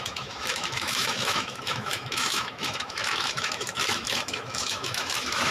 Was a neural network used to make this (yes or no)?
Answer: yes